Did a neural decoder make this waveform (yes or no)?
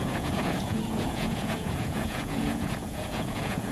yes